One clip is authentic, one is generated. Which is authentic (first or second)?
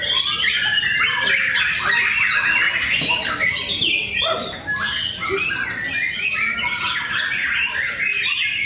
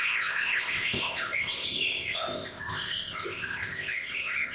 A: first